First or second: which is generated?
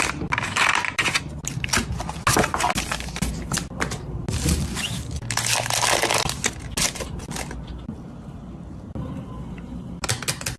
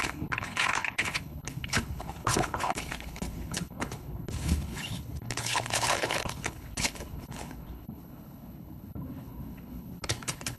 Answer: second